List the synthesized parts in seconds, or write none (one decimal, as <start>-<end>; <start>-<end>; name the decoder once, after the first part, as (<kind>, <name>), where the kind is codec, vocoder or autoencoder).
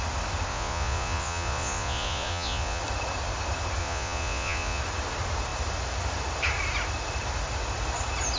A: 0.5-2.8 (vocoder, Vocos); 3.8-4.8